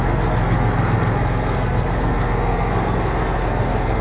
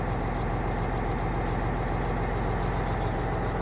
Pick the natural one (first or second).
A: second